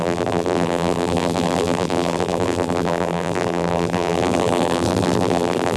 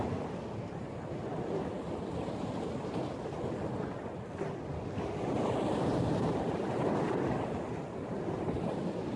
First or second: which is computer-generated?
first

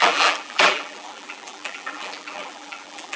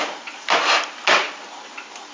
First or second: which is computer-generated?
first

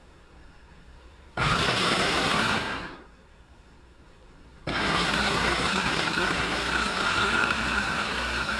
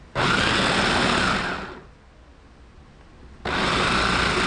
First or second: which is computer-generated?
first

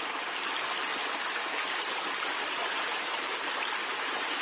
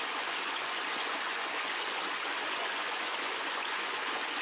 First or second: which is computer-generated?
second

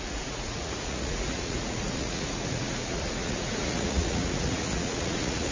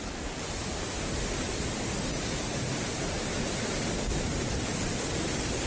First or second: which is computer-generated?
first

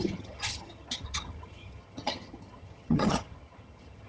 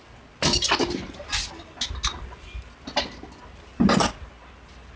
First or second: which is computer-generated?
first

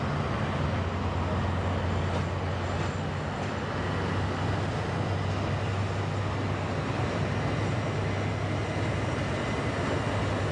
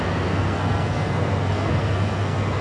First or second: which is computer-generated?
second